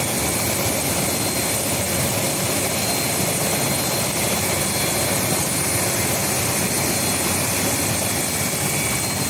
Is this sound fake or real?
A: real